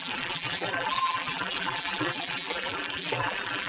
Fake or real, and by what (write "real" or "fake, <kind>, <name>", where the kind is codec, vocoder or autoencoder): fake, vocoder, BigVGAN v2